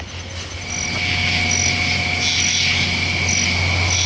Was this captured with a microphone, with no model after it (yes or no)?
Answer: yes